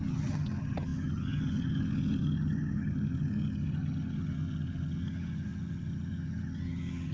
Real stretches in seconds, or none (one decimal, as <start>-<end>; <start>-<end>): none